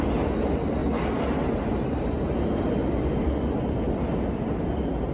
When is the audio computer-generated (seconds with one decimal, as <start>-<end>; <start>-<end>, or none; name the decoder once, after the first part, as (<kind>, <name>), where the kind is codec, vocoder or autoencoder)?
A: none